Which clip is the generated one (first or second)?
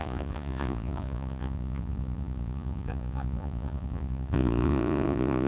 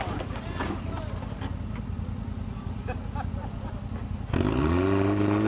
first